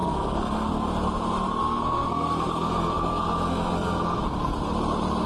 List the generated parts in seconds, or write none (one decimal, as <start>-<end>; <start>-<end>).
0.0-0.7; 1.6-4.2